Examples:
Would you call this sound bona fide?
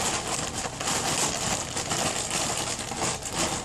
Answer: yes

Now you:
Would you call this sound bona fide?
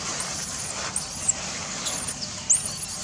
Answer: yes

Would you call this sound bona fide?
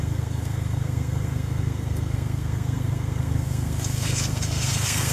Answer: no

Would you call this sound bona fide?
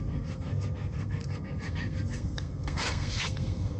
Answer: no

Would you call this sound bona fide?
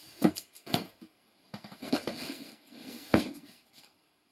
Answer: no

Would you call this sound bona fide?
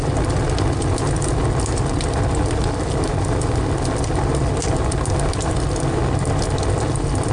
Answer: yes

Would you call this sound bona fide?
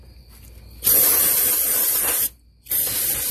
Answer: yes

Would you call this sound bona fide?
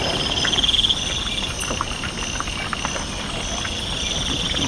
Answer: yes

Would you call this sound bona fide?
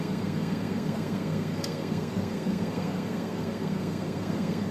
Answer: no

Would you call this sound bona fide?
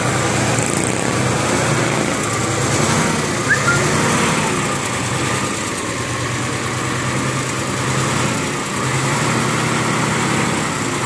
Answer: yes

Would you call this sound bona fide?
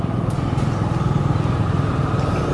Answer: yes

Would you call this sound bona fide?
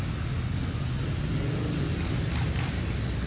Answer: yes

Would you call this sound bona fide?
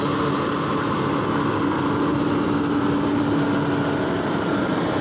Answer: yes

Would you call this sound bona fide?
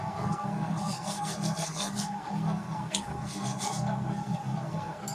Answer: no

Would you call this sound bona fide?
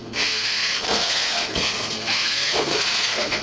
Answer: no